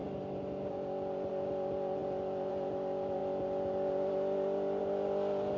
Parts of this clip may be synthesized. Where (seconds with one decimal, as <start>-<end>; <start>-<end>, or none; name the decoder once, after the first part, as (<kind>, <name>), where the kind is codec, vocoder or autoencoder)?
none